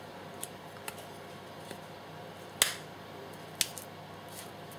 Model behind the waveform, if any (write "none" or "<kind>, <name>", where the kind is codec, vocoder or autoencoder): none